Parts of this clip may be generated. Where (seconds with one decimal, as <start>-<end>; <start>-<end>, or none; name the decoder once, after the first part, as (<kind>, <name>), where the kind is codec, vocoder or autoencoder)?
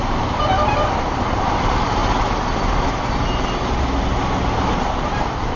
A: 0.0-2.0 (vocoder, BigVGAN v2); 4.9-5.6